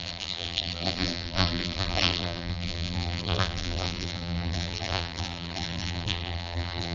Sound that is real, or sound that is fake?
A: fake